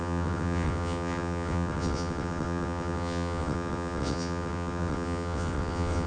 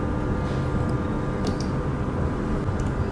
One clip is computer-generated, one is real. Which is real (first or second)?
second